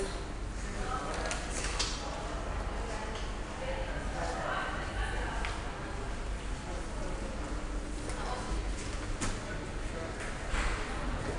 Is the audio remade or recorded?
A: recorded